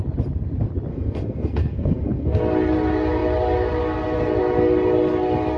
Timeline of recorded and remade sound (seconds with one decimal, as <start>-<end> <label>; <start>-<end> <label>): 0.0-0.9 recorded; 0.9-2.4 remade; 2.4-5.6 recorded